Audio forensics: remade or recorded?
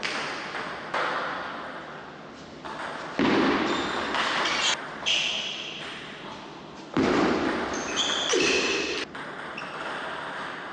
recorded